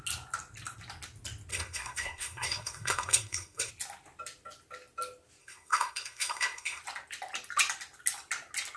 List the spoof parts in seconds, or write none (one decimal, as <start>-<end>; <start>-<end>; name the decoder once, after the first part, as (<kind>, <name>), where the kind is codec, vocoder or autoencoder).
1.5-3.7 (codec, SNAC); 5.4-6.8

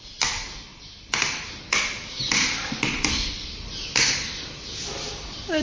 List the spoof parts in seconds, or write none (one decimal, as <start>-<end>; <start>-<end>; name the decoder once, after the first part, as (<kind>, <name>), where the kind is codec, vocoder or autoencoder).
none

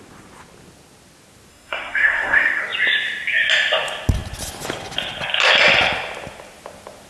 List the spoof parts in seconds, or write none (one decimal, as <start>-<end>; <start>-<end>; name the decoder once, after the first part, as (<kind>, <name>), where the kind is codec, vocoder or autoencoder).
1.5-2.6 (codec, SNAC)

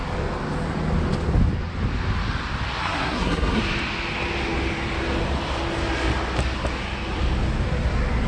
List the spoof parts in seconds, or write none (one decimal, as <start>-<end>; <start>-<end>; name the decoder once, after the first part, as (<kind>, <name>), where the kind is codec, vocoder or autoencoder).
2.8-3.6 (codec, SNAC)

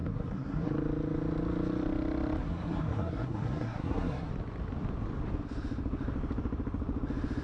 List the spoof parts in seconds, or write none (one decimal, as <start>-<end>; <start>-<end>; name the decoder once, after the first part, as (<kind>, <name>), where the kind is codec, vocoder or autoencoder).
0.0-0.7 (codec, SNAC); 2.4-4.3